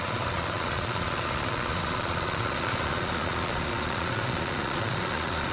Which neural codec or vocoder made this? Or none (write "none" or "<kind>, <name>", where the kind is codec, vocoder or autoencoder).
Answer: vocoder, Vocos